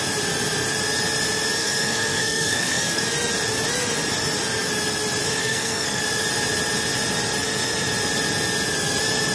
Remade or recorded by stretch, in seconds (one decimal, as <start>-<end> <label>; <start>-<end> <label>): 0.0-1.6 recorded; 1.6-3.0 remade; 3.0-5.4 recorded; 5.4-6.0 remade; 6.0-9.3 recorded